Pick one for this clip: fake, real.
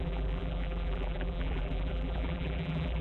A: fake